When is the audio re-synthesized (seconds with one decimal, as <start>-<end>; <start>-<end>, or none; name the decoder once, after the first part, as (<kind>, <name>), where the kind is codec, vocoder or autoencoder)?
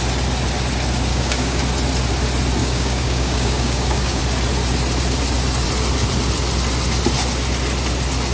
1.1-1.6 (codec, DAC); 2.6-4.2